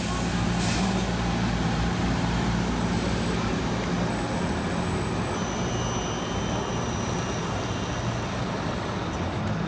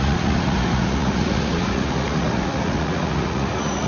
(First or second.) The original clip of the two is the first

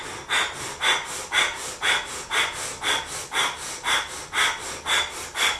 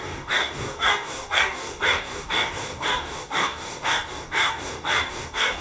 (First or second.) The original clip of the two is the first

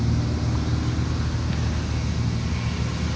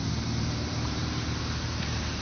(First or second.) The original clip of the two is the first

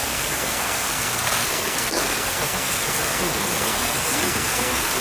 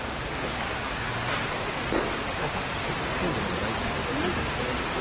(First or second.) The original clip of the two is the second